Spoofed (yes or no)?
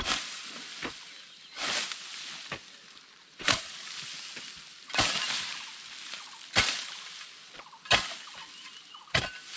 no